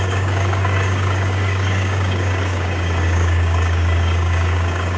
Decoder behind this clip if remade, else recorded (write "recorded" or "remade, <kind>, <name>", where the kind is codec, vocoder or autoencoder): remade, codec, DAC